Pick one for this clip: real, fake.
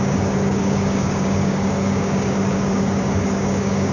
fake